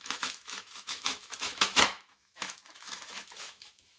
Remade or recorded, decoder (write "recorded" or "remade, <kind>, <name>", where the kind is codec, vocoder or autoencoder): remade, autoencoder, DAC-VAE